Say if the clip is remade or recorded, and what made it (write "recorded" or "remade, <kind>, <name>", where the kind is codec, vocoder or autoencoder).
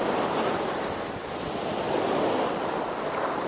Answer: recorded